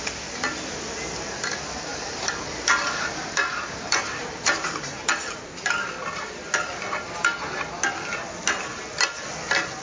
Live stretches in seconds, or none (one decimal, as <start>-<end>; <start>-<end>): 0.0-1.9; 5.4-9.8